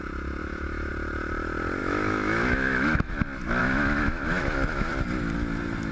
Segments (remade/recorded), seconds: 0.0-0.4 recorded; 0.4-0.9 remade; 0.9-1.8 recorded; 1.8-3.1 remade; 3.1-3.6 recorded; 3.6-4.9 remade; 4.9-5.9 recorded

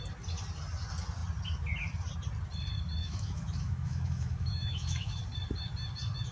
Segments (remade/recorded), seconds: 0.0-3.0 recorded; 3.0-5.2 remade; 5.2-6.3 recorded

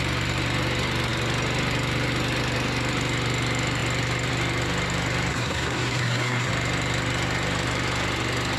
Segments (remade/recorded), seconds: 0.0-5.3 recorded; 5.3-6.5 remade; 6.5-8.6 recorded